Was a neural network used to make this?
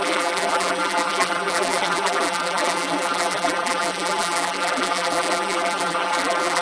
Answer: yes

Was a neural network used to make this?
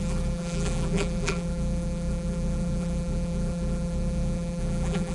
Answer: yes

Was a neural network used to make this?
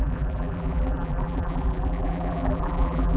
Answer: yes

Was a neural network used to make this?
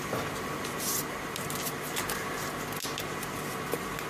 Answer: no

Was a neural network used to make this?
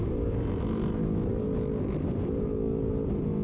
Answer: no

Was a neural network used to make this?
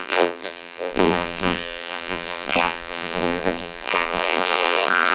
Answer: yes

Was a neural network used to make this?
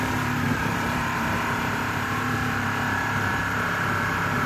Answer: yes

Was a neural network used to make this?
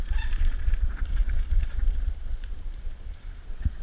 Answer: yes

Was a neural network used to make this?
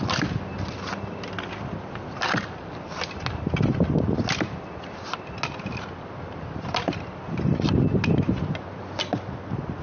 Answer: no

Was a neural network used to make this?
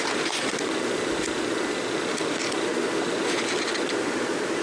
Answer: no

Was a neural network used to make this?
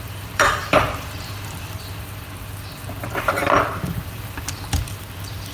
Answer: yes